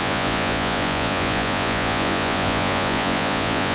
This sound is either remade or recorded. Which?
remade